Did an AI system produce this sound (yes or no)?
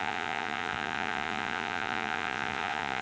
yes